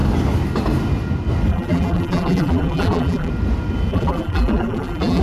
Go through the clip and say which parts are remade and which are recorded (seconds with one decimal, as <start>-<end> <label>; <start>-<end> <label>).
0.0-1.5 recorded; 1.5-3.3 remade; 3.3-3.9 recorded; 3.9-5.2 remade